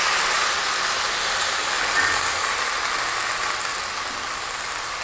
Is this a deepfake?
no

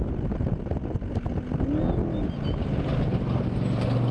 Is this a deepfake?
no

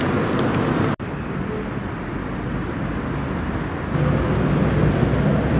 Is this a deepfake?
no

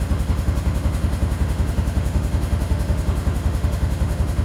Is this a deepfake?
yes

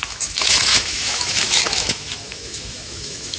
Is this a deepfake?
yes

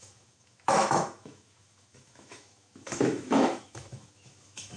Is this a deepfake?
yes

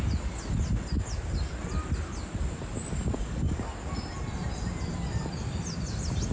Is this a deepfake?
no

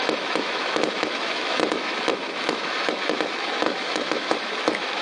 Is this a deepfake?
yes